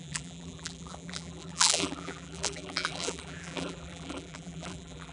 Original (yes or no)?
no